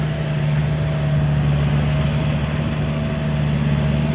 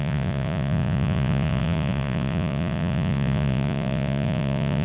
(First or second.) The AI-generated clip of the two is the second